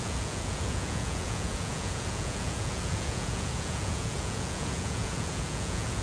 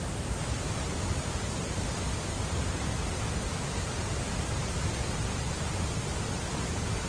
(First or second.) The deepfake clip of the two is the first